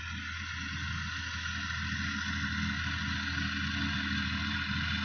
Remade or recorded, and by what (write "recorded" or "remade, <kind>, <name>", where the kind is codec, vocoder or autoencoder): recorded